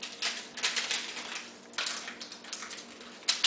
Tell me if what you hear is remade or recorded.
recorded